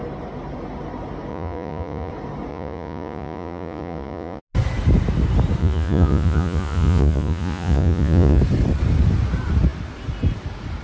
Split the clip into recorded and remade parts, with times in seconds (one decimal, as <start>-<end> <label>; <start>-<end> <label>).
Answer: 0.0-1.3 recorded; 1.3-2.1 remade; 2.1-2.5 recorded; 2.5-4.4 remade; 4.4-5.6 recorded; 5.6-8.4 remade; 8.4-10.8 recorded